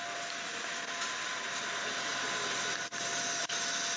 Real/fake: real